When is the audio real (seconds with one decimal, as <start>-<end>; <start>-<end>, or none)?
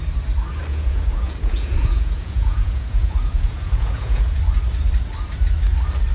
0.0-0.7; 4.4-6.1